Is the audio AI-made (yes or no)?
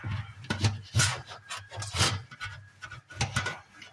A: no